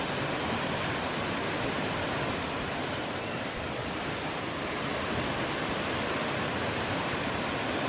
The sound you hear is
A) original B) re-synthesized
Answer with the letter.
A